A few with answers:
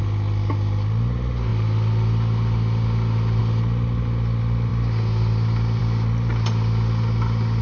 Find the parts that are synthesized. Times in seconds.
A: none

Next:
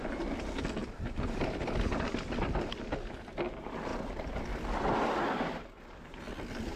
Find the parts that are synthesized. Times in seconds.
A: 0.8-2.4 (vocoder, BigVGAN v2)

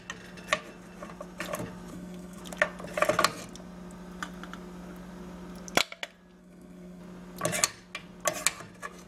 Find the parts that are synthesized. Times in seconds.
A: 1.9-2.4 (codec, SNAC); 6.4-7.0